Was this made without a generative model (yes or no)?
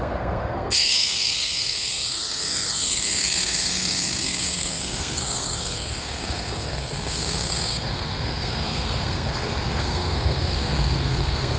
no